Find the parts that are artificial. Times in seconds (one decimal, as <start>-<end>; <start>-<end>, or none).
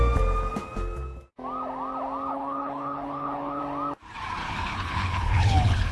2.3-3.6; 4.4-5.9